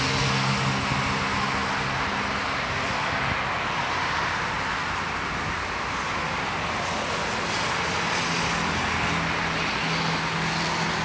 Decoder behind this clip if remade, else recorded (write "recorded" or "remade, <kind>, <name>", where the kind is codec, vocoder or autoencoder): recorded